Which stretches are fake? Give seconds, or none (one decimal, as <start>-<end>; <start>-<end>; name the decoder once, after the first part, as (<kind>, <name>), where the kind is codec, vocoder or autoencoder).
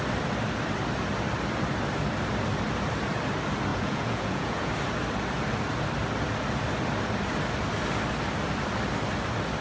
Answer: 3.7-4.7 (vocoder, Vocos)